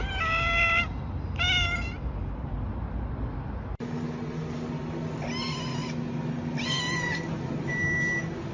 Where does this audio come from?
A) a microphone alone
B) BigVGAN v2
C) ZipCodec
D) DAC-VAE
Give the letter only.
A